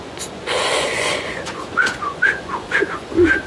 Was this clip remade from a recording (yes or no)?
yes